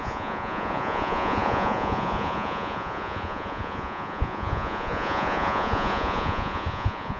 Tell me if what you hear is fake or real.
fake